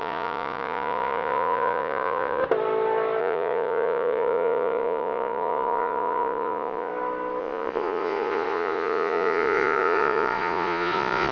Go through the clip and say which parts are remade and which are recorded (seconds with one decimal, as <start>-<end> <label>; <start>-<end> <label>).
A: 0.0-2.4 remade; 2.4-3.2 recorded; 3.2-6.9 remade; 6.9-7.4 recorded; 7.4-11.3 remade